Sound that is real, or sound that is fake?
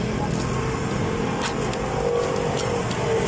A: real